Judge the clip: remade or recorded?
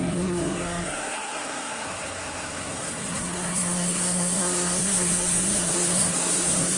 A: remade